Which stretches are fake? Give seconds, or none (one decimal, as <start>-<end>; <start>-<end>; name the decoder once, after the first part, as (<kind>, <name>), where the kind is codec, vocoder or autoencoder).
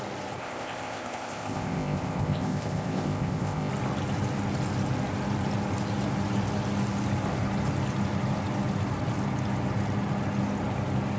0.4-3.7 (codec, ZipCodec)